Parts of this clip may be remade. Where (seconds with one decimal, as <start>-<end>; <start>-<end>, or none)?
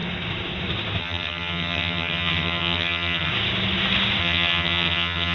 1.0-3.3; 4.2-5.3